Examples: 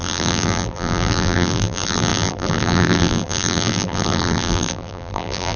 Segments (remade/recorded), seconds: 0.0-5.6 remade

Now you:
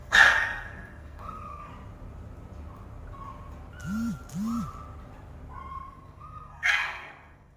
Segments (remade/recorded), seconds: 0.0-1.7 remade; 1.7-5.7 recorded; 5.7-7.6 remade

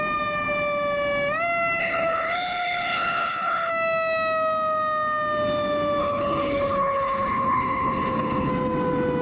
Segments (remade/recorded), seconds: 0.0-1.8 recorded; 1.8-3.7 remade; 3.7-6.0 recorded; 6.0-8.5 remade; 8.5-9.2 recorded

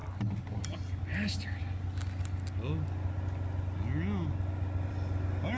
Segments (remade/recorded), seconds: 0.0-5.6 recorded

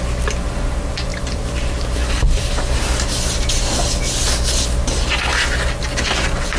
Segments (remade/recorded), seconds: 0.0-1.1 recorded; 1.1-2.2 remade; 2.2-6.6 recorded

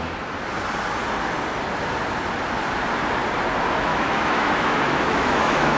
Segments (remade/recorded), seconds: 0.0-3.9 recorded; 3.9-5.8 remade

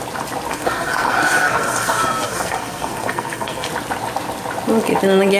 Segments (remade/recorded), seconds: 0.0-0.5 recorded; 0.5-3.7 remade; 3.7-5.4 recorded

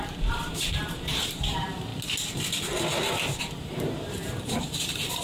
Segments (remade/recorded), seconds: 0.0-1.9 remade; 1.9-3.4 recorded; 3.4-5.2 remade